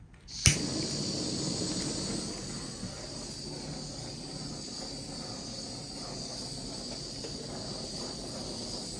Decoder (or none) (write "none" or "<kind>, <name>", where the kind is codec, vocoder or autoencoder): none